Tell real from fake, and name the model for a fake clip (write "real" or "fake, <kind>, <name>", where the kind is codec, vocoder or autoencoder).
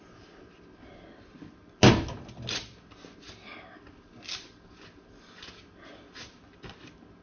real